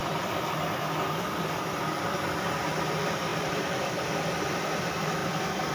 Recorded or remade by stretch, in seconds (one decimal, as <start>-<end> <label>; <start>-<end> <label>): 0.0-2.2 remade; 2.2-3.3 recorded; 3.3-3.9 remade; 3.9-5.7 recorded